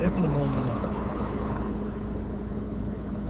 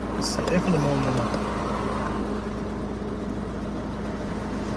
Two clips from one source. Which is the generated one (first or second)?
first